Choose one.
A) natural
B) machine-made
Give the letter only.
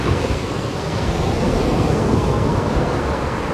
B